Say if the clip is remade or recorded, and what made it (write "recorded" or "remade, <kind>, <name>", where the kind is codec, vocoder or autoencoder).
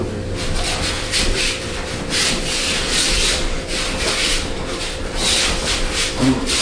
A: remade, vocoder, BigVGAN v2